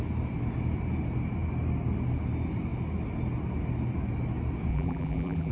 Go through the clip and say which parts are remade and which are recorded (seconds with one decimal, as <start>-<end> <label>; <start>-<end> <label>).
0.0-4.7 recorded; 4.7-5.5 remade